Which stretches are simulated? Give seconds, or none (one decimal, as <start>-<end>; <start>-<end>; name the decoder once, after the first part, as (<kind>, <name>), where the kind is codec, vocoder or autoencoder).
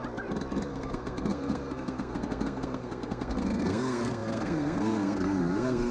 0.7-5.9 (codec, SNAC)